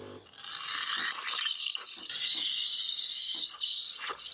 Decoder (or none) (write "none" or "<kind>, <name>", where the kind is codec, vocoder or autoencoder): vocoder, BigVGAN v2